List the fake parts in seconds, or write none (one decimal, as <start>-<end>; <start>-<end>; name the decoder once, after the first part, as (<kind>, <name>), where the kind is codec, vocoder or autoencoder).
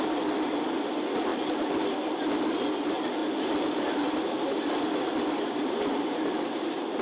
1.3-1.9 (vocoder, BigVGAN v2)